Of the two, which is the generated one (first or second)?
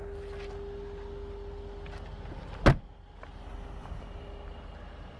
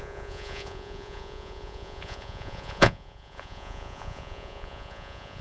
second